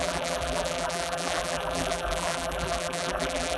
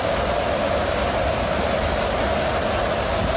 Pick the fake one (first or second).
first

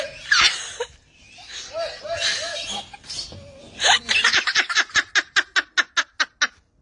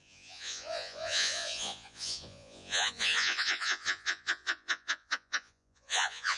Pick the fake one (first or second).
second